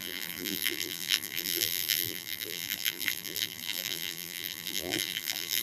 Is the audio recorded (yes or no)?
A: no